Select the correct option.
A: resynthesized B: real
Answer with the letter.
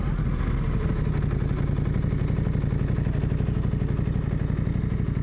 B